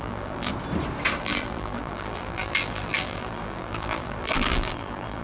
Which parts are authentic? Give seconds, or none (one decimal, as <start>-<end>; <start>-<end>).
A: 0.5-1.2

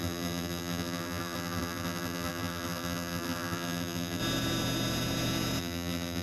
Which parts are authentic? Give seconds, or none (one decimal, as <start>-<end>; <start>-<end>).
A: 4.2-5.6

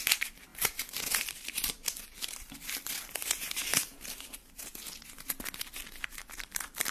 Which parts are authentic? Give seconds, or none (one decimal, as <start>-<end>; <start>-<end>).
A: 4.7-5.7

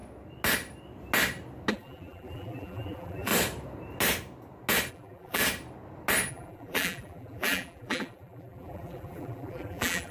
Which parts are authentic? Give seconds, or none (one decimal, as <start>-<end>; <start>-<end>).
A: 0.0-1.7; 3.3-4.9; 5.4-6.3

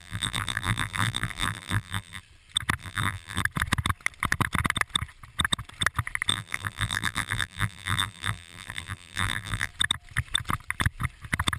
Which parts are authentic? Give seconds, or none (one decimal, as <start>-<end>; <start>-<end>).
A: 2.2-2.8; 3.4-6.3; 9.7-11.6

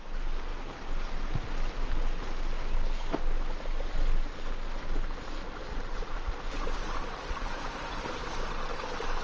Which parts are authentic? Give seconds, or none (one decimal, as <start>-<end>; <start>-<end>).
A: 0.0-5.7; 8.2-9.2